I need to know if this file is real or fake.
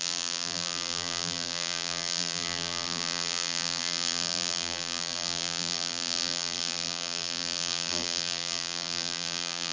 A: fake